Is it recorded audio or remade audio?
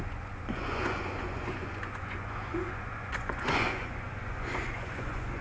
remade